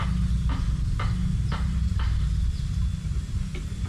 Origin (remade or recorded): recorded